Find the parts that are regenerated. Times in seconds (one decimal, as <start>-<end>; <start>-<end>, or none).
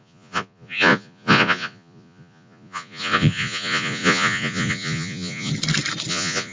0.0-5.5; 6.1-6.5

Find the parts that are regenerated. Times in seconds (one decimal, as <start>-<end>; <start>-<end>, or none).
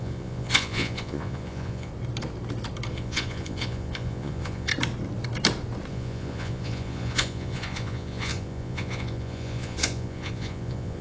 0.0-1.9; 2.9-4.7; 5.9-11.0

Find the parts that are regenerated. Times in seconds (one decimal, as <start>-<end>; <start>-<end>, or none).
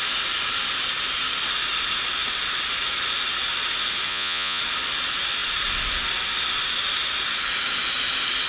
4.1-4.6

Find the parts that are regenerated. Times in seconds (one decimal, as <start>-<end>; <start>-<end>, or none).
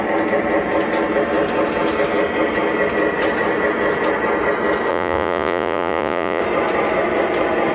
4.9-6.4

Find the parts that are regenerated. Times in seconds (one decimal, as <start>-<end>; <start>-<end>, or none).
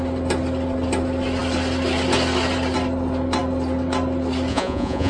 4.5-5.1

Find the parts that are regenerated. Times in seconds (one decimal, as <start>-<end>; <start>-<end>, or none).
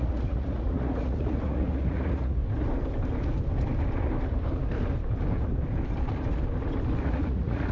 0.0-2.4; 7.0-7.7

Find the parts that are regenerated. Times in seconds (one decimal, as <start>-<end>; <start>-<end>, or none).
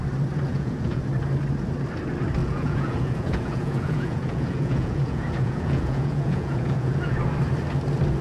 0.5-1.0; 2.4-7.3